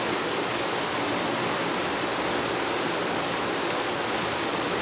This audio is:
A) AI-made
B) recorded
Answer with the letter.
B